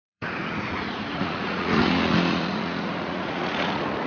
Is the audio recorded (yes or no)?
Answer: no